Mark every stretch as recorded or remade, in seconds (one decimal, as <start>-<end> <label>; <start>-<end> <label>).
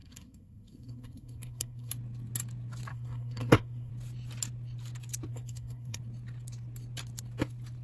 0.0-1.9 remade; 1.9-2.9 recorded; 2.9-3.9 remade; 3.9-5.3 recorded; 5.3-6.0 remade; 6.0-7.8 recorded